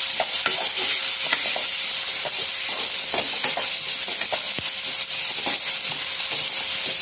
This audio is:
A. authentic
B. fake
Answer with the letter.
A